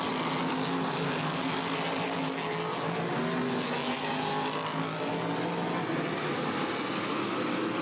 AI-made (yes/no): no